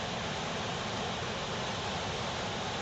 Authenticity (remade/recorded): recorded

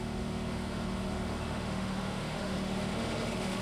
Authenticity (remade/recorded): remade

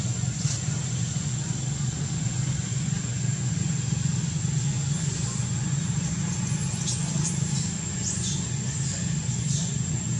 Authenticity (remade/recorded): remade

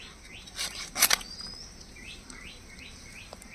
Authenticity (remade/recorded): recorded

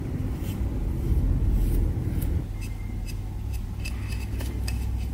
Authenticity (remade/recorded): recorded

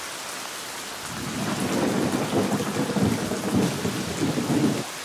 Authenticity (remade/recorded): recorded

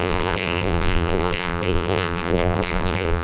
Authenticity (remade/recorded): remade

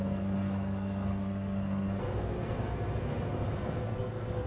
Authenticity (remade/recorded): remade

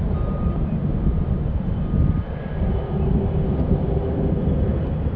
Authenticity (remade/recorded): recorded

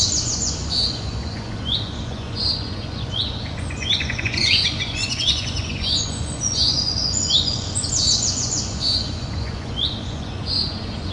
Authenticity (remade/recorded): remade